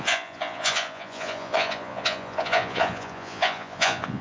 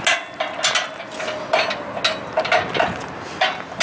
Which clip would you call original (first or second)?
second